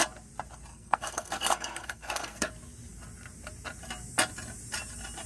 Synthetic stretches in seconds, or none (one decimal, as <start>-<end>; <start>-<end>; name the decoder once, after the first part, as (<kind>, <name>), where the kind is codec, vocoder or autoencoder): 0.7-2.5 (codec, SNAC)

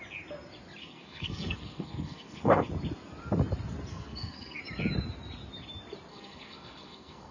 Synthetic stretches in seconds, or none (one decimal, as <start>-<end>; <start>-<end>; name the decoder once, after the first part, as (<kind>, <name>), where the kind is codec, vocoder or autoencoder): 0.8-2.7 (codec, SNAC); 3.9-4.6; 6.1-7.3